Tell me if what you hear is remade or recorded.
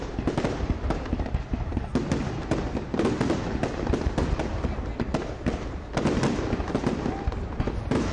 recorded